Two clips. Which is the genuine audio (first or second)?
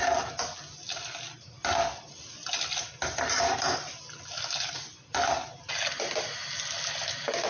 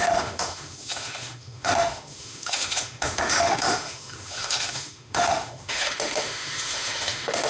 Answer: first